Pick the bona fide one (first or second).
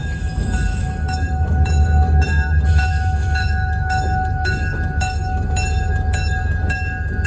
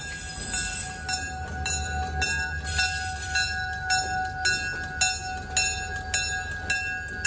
second